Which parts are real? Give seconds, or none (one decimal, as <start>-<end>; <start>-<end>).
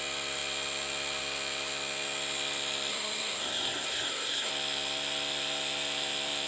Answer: 0.0-2.9; 4.5-6.5